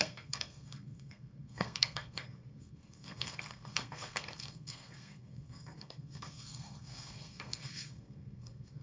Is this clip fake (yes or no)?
yes